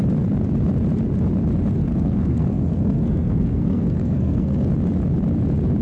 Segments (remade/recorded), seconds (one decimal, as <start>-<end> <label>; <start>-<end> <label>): 0.0-1.8 recorded; 1.8-4.7 remade; 4.7-5.8 recorded